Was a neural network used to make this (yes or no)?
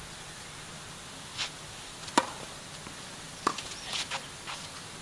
no